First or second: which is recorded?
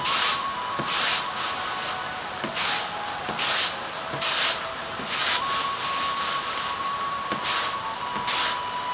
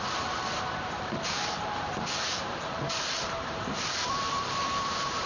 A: first